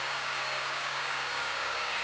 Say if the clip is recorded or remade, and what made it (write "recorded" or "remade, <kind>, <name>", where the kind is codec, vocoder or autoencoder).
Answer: remade, codec, DAC